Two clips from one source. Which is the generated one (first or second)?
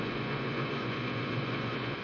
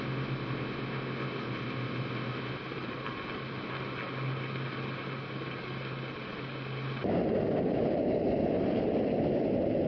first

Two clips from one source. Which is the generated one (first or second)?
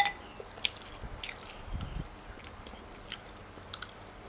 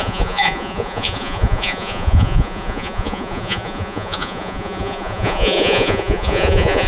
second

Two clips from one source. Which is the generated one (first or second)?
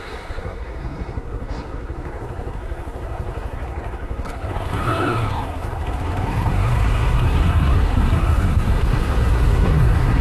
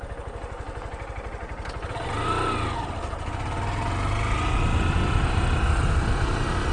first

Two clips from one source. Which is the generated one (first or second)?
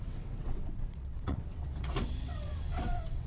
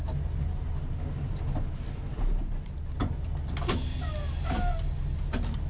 first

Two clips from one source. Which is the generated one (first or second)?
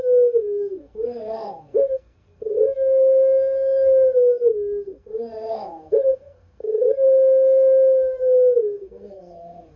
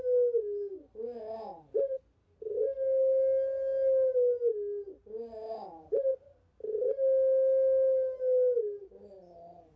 first